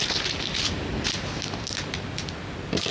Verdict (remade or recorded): recorded